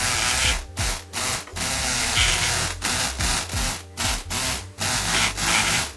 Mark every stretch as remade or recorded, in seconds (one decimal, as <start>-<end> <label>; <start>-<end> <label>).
0.0-6.0 recorded